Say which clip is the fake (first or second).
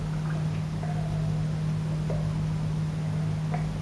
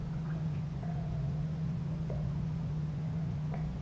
second